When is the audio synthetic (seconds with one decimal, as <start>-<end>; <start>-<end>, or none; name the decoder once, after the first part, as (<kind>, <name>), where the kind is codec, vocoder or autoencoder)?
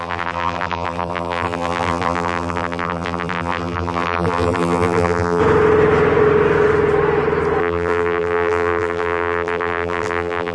0.0-5.4 (vocoder, BigVGAN v2); 7.6-10.5